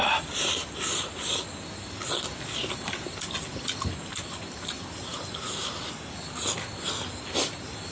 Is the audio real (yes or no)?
yes